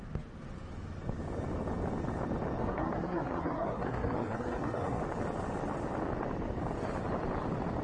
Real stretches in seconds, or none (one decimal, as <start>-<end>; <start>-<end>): 0.0-2.6; 5.0-7.8